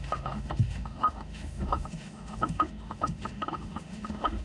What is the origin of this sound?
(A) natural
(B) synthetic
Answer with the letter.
B